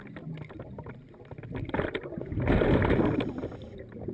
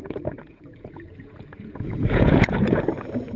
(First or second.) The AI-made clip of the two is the second